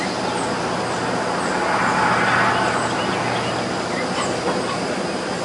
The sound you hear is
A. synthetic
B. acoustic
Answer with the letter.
B